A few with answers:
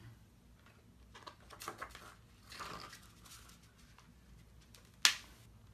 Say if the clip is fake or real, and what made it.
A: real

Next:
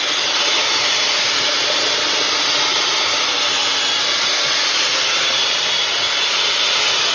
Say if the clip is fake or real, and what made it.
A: real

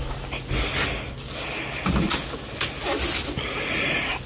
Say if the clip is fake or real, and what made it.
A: real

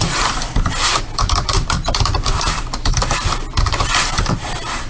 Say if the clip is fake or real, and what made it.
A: fake, vocoder, BigVGAN v2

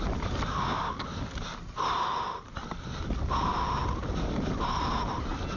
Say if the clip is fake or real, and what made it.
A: real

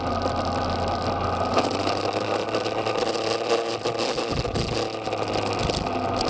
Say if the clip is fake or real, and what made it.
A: real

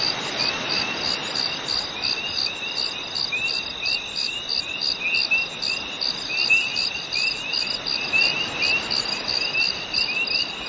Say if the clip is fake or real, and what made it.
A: real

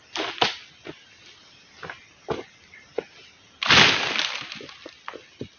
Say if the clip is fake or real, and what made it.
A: real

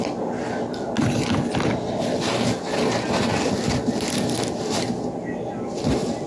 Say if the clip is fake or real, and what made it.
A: real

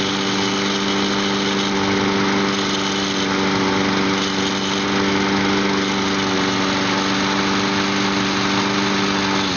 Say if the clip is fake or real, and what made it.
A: real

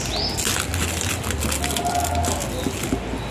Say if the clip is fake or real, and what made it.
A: real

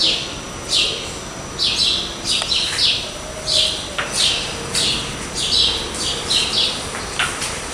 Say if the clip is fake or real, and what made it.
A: real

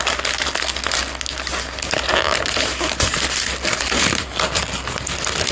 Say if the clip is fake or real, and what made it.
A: real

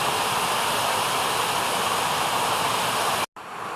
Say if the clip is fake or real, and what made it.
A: real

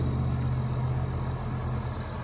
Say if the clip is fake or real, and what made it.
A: real